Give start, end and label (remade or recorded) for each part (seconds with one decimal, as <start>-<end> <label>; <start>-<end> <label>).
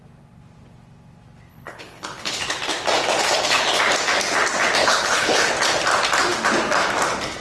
0.0-1.5 recorded; 1.5-2.6 remade; 2.6-3.2 recorded; 3.2-3.8 remade; 3.8-4.8 recorded; 4.8-5.5 remade; 5.5-7.4 recorded